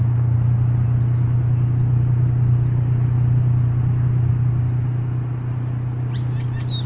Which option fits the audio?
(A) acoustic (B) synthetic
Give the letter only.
A